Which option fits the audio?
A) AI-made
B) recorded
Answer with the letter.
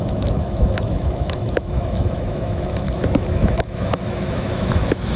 A